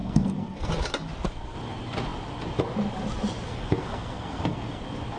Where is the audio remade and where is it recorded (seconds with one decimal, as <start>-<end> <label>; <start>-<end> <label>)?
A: 0.0-0.7 remade; 0.7-3.5 recorded; 3.5-4.8 remade; 4.8-5.2 recorded